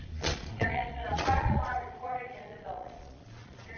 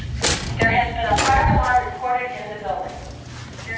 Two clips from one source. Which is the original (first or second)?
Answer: second